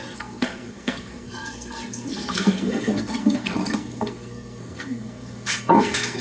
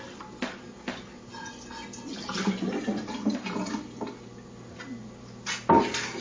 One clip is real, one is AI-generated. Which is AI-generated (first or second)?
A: first